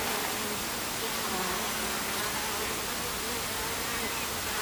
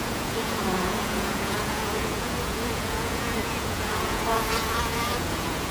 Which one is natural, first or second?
first